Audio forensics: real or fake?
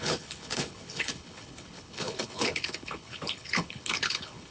fake